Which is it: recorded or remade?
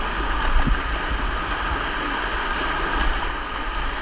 recorded